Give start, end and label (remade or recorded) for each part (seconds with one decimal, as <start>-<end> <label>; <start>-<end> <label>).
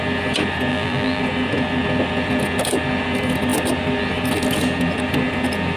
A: 0.0-0.7 recorded; 0.7-1.2 remade; 1.2-5.8 recorded